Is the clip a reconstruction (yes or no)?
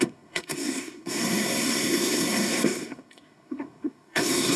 yes